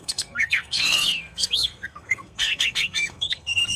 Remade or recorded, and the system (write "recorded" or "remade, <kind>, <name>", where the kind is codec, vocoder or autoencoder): remade, codec, SNAC